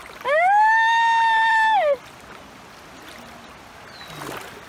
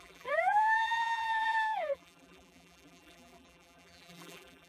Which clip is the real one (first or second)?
first